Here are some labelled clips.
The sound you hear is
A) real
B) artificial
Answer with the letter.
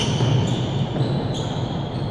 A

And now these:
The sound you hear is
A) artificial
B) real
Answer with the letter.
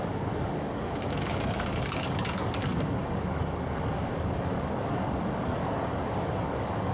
A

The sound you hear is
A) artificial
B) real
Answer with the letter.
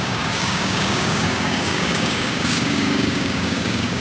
A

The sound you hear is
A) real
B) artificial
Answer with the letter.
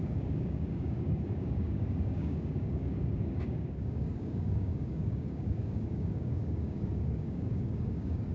B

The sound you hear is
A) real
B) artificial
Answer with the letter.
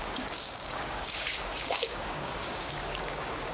B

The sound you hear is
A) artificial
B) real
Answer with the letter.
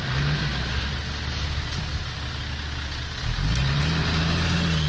B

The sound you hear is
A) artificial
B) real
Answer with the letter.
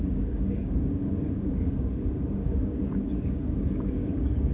A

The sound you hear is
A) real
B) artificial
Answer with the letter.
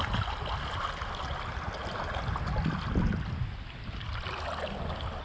A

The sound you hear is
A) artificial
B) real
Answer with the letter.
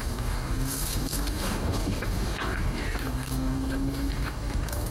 A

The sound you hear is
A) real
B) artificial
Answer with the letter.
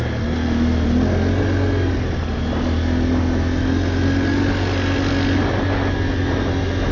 A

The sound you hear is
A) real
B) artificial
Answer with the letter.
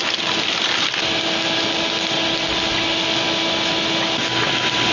A